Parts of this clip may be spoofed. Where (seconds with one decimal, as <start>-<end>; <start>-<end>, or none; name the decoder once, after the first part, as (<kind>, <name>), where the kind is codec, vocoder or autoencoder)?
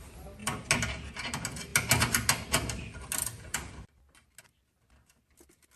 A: none